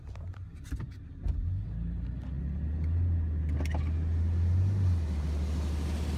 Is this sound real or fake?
real